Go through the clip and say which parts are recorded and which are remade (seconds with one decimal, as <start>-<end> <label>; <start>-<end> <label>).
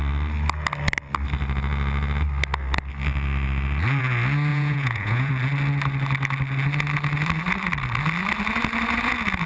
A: 0.0-4.5 recorded; 4.5-5.3 remade; 5.3-9.5 recorded